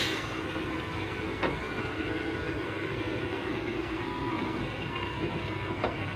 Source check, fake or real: fake